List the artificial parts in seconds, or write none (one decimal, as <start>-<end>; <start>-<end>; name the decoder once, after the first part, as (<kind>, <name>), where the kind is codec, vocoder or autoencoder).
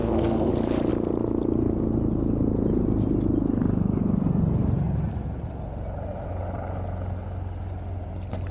0.0-0.5 (codec, SNAC)